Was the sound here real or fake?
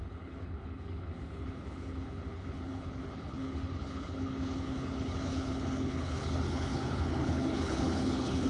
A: fake